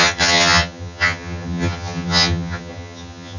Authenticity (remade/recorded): remade